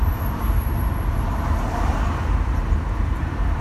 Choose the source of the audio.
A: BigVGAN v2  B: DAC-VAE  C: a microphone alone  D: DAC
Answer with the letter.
A